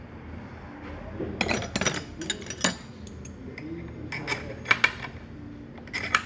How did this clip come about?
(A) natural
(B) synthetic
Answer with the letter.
A